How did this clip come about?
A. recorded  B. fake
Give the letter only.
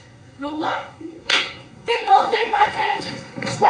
B